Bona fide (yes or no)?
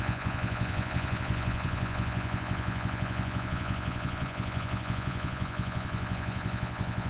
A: no